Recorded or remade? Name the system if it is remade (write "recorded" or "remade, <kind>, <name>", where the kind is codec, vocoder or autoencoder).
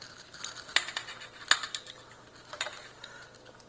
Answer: recorded